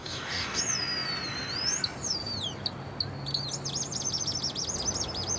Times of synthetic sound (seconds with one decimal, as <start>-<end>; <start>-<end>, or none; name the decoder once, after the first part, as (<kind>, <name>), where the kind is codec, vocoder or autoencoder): 0.0-0.6 (codec, DAC)

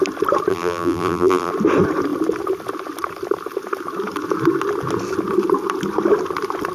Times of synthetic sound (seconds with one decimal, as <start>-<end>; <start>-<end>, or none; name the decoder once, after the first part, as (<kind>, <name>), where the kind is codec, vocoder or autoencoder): 0.5-1.5 (vocoder, BigVGAN v2)

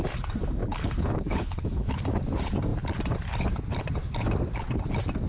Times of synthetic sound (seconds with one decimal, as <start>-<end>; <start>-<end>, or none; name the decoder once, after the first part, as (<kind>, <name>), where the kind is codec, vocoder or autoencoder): 0.6-2.0 (codec, HILCodec)

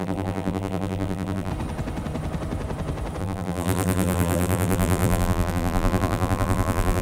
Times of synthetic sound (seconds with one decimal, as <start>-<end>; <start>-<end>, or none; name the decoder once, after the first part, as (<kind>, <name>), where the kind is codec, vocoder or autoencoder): 0.0-1.5 (vocoder, BigVGAN v2); 3.2-7.0